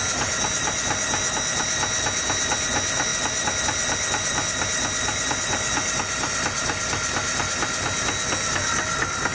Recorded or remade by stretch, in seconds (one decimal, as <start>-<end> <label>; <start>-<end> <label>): 0.0-9.3 recorded